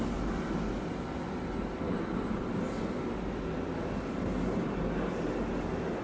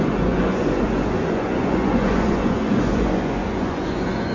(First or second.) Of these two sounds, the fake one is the second